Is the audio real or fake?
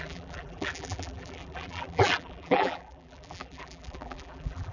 fake